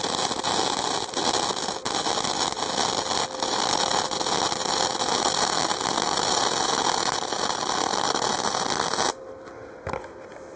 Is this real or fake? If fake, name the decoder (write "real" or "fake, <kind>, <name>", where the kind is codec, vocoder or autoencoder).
real